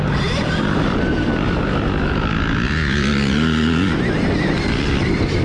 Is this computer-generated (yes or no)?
no